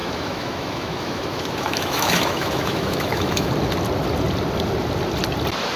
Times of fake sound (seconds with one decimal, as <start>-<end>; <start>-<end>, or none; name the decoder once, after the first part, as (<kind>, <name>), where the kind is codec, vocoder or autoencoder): 0.0-3.5 (autoencoder, DAC-VAE)